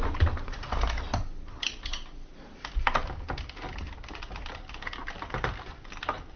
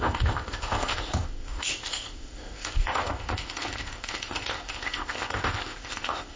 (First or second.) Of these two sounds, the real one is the first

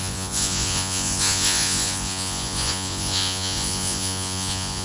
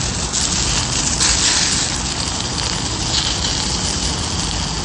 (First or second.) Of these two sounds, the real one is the second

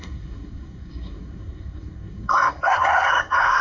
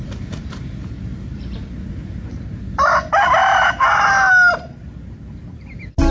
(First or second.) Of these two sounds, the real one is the second